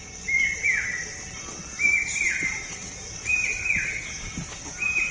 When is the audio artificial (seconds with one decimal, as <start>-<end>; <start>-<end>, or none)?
none